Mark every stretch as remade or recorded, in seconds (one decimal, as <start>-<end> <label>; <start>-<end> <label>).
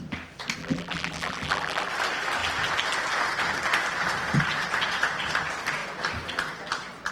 0.0-0.6 recorded; 0.6-1.9 remade; 1.9-7.1 recorded